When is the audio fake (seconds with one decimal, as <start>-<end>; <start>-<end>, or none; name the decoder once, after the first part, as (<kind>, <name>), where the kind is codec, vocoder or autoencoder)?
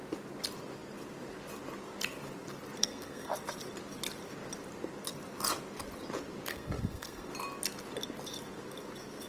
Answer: 2.8-3.3 (codec, SNAC); 6.5-7.3